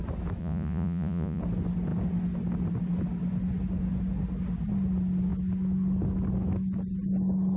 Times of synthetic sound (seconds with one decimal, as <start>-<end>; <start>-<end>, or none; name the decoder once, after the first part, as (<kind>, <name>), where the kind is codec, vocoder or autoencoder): 0.4-1.4 (vocoder, Vocos)